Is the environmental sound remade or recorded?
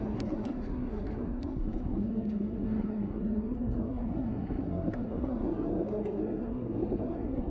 remade